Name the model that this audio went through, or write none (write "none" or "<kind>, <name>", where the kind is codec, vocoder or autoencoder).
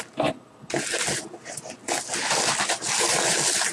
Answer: none